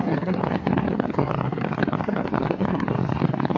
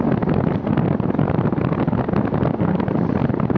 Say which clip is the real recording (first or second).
second